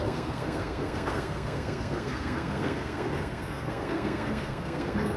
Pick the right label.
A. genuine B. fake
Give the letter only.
B